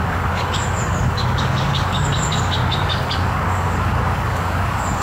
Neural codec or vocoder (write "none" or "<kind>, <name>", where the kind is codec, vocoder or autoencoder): codec, DAC